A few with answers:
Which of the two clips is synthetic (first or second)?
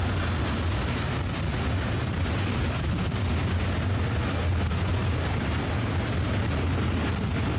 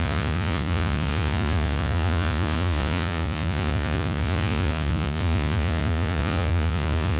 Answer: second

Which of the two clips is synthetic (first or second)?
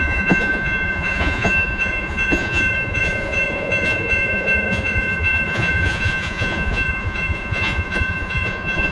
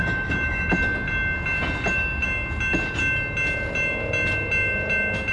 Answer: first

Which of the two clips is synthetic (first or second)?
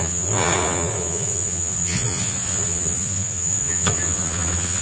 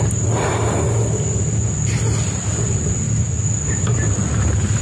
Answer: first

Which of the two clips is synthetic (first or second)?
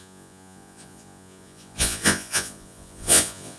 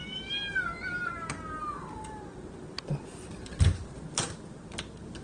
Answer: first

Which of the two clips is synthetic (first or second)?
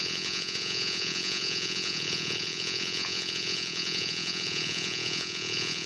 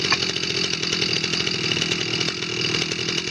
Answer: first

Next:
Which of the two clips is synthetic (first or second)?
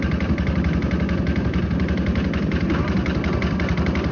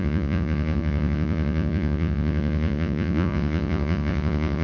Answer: second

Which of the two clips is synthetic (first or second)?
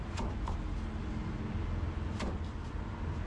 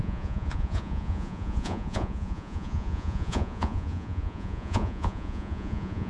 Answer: second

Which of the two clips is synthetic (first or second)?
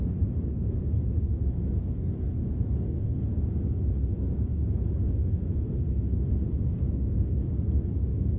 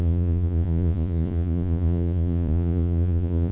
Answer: second